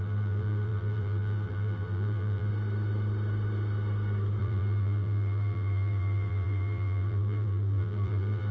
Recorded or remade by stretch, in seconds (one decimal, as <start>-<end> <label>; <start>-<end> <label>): 0.0-2.5 remade; 2.5-4.4 recorded; 4.4-8.5 remade